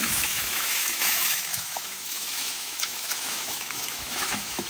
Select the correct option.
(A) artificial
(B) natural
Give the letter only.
A